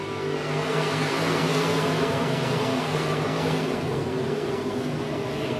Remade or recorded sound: remade